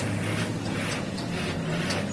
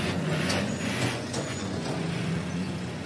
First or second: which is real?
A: first